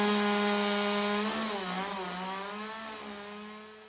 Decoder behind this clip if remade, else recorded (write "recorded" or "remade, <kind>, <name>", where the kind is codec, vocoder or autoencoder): recorded